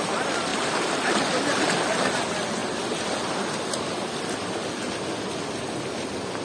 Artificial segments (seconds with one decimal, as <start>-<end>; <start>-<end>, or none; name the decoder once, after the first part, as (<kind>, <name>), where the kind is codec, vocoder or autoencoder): none